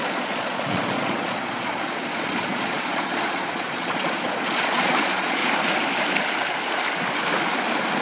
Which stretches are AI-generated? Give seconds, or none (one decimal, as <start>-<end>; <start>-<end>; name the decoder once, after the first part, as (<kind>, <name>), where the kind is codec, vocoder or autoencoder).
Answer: 0.0-5.4 (vocoder, Vocos)